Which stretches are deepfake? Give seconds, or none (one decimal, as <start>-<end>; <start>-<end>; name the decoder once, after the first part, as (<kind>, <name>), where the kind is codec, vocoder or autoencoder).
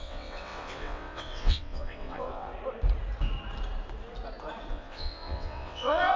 0.0-2.5 (vocoder, WaveNeXt); 4.7-6.2